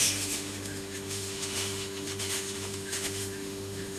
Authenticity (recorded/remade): remade